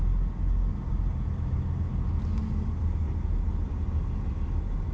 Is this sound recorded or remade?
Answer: recorded